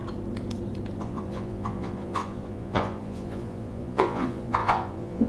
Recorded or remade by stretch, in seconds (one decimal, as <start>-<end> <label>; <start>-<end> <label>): 0.0-1.0 recorded; 1.0-5.3 remade